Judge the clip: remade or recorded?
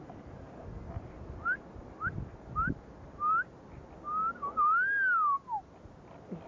recorded